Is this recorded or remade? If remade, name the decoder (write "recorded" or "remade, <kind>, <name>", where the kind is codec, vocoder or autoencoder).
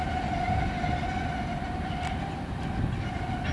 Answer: recorded